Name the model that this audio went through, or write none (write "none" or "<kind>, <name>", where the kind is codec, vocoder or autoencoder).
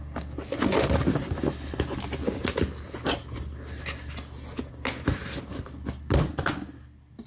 none